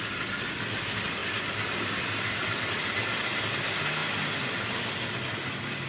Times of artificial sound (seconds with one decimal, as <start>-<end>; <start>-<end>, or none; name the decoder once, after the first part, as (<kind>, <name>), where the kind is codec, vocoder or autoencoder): 1.2-2.0 (vocoder, BigVGAN v2); 2.4-3.0; 4.0-5.1